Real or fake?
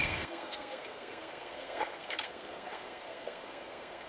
fake